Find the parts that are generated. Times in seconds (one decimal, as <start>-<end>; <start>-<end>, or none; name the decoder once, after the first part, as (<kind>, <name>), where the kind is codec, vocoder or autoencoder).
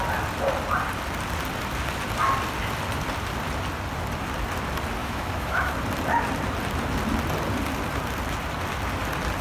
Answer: 5.0-5.7 (autoencoder, DAC-VAE)